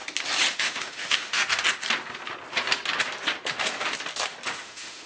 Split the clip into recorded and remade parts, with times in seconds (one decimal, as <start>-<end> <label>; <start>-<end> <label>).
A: 0.0-0.5 recorded; 0.5-1.4 remade; 1.4-4.5 recorded; 4.5-5.1 remade